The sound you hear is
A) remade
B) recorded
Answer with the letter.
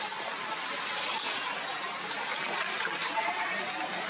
B